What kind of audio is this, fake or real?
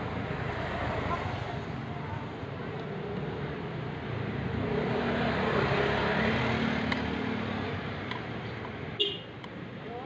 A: real